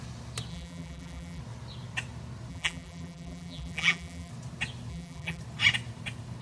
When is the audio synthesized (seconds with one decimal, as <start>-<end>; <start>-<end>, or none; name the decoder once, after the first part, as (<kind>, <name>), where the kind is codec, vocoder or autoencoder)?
0.5-1.4 (vocoder, BigVGAN v2); 2.5-4.3; 4.9-5.4

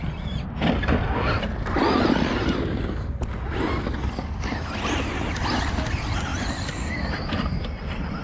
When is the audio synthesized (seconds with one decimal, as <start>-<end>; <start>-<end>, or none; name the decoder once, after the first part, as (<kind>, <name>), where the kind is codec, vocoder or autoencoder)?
none

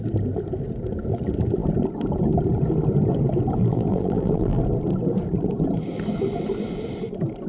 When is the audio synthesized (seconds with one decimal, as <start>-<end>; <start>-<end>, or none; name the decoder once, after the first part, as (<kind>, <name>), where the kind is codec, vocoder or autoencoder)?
3.6-4.6 (vocoder, BigVGAN v2)

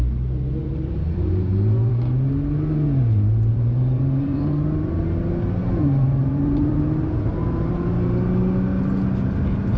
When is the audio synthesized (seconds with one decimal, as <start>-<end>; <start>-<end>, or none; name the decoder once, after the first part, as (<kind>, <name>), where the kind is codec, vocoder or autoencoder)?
0.6-1.9 (vocoder, BigVGAN v2); 3.5-5.0; 5.6-7.7

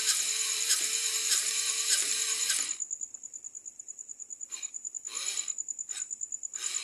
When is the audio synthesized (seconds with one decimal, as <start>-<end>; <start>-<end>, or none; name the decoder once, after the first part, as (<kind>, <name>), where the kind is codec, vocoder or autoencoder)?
0.0-2.5 (vocoder, BigVGAN v2); 3.7-4.9